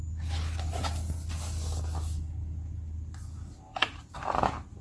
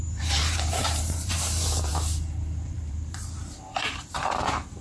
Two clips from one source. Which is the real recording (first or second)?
first